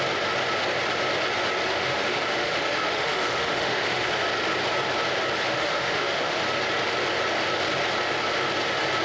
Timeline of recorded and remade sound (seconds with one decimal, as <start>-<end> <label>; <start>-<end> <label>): 0.0-1.7 recorded; 1.7-4.1 remade; 4.1-5.5 recorded; 5.5-6.4 remade; 6.4-9.0 recorded

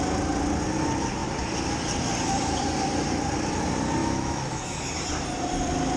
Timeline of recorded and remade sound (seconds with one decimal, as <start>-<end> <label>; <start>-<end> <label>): 0.0-4.0 recorded; 4.0-4.9 remade; 4.9-6.0 recorded

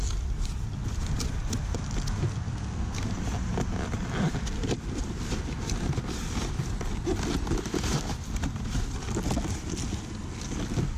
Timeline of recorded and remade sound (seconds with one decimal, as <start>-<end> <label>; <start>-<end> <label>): 0.0-2.5 recorded; 2.5-3.1 remade; 3.1-11.0 recorded

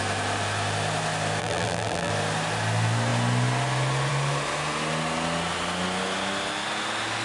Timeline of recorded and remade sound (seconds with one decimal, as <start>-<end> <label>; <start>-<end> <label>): 0.0-1.4 recorded; 1.4-2.1 remade; 2.1-7.2 recorded

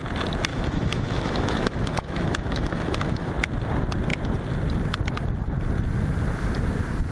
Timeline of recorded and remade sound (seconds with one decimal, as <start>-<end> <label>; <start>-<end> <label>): 0.0-0.5 recorded; 0.5-3.3 remade; 3.3-7.1 recorded